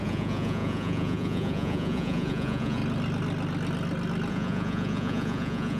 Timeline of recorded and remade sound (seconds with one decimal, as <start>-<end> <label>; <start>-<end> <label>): 0.0-2.8 remade; 2.8-4.3 recorded; 4.3-5.8 remade

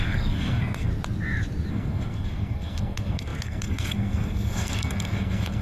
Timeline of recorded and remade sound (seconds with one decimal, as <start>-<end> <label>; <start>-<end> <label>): 0.0-0.9 remade; 0.9-1.7 recorded; 1.7-5.6 remade

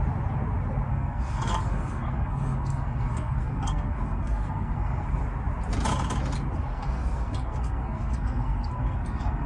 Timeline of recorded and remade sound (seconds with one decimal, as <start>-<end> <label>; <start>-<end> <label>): 0.0-0.9 recorded; 0.9-5.2 remade; 5.2-6.7 recorded; 6.7-9.5 remade

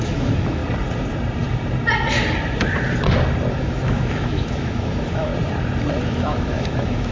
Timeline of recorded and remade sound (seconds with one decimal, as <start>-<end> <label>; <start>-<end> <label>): 0.0-0.6 remade; 0.6-3.6 recorded; 3.6-5.3 remade; 5.3-6.0 recorded; 6.0-7.1 remade